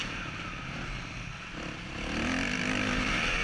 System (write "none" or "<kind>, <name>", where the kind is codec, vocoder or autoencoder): none